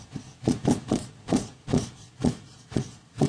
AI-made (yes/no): yes